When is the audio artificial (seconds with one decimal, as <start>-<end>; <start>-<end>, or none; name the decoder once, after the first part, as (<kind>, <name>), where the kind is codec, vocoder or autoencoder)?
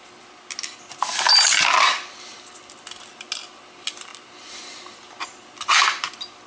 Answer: none